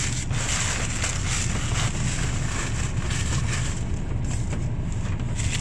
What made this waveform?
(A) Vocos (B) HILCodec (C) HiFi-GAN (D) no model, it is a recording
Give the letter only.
D